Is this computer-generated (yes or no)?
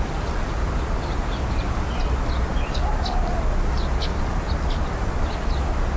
no